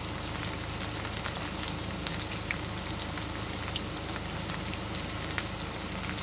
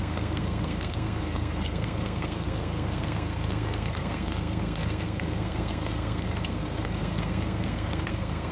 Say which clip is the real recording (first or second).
first